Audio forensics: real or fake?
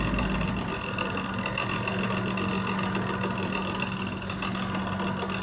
real